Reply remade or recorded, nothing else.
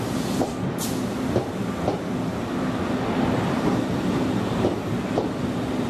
recorded